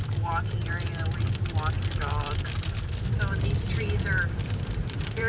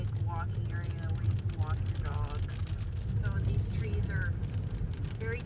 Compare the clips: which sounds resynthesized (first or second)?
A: first